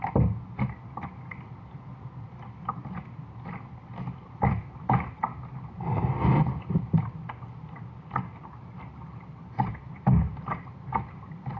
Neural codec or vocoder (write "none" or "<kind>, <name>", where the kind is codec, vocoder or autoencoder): none